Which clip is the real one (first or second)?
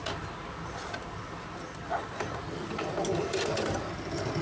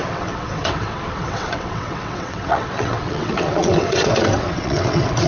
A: first